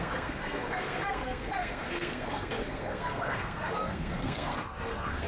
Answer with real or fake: fake